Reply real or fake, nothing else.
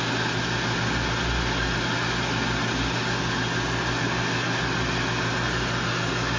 real